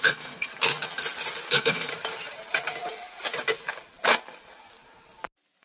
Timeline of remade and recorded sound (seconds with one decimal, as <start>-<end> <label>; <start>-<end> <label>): 0.0-0.5 remade; 0.5-1.5 recorded; 1.5-1.9 remade; 1.9-5.6 recorded